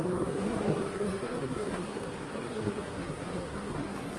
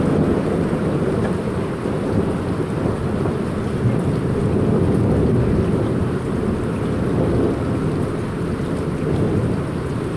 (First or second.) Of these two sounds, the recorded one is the second